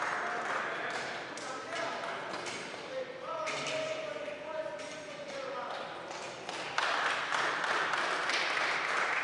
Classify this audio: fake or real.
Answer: real